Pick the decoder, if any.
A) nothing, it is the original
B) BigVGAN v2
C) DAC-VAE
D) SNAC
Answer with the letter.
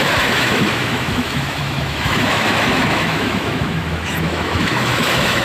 C